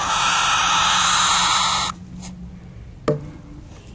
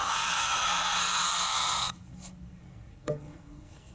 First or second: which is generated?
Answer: second